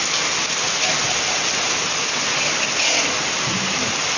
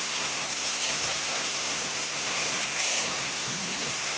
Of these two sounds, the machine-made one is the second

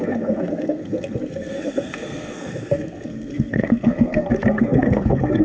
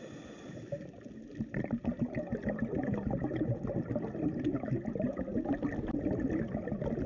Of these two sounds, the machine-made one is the first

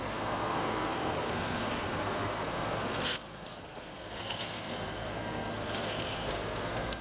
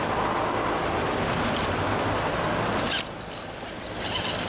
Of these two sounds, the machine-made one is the first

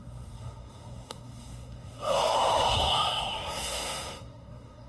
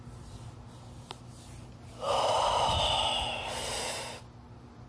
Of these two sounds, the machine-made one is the first